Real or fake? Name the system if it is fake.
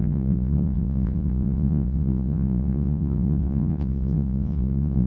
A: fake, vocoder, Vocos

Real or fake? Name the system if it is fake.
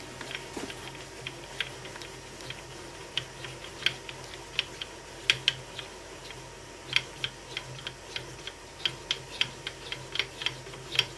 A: real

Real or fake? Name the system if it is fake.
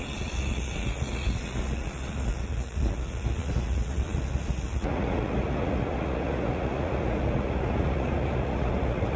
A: fake, vocoder, Vocos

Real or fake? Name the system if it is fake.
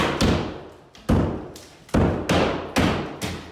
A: real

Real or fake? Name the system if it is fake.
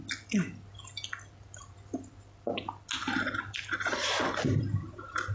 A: real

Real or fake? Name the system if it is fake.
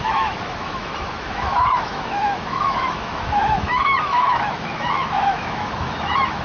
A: fake, autoencoder, DAC-VAE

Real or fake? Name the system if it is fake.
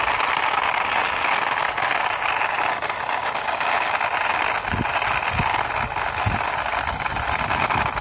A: real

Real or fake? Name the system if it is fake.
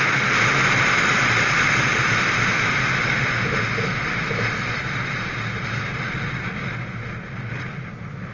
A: real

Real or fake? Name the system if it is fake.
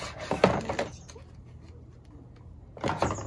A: real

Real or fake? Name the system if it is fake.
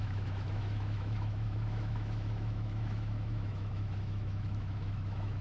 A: fake, autoencoder, DAC-VAE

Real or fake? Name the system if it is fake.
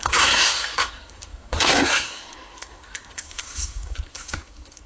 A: fake, codec, SNAC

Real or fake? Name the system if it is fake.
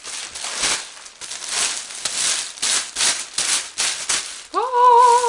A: real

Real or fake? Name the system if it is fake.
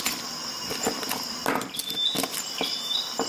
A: real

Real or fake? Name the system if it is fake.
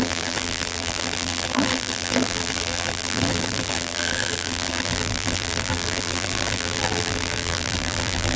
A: fake, vocoder, BigVGAN v2